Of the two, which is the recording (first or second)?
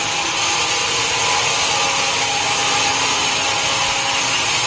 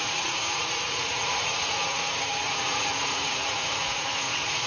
first